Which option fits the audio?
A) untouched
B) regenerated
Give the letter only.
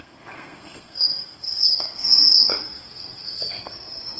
B